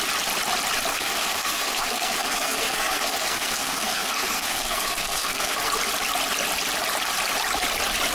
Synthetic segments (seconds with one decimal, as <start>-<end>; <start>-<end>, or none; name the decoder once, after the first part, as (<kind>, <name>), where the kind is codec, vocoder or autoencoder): 0.9-5.7 (codec, SNAC)